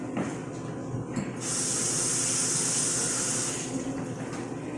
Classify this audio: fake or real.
real